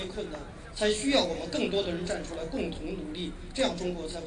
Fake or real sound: real